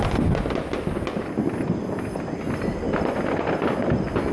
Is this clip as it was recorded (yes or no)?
yes